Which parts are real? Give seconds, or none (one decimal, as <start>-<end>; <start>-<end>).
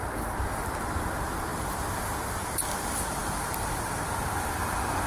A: 0.0-5.1